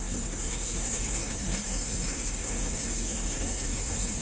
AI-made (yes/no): yes